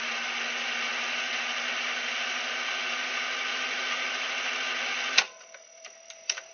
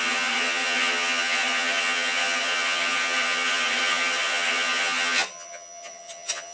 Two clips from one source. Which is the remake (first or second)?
second